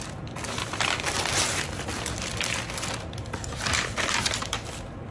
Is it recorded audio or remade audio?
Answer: recorded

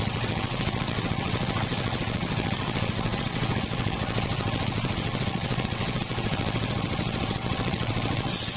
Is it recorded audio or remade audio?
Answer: remade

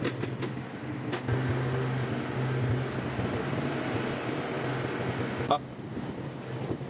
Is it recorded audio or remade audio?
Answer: recorded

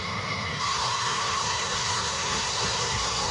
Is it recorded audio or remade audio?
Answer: remade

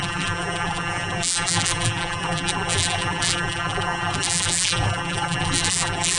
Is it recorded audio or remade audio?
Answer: remade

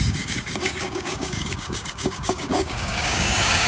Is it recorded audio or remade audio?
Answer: remade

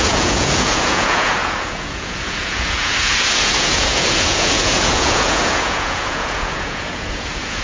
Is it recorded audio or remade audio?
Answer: remade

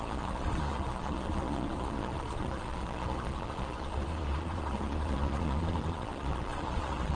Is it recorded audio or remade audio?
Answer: remade